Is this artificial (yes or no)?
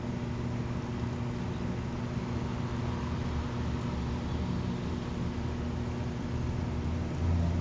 no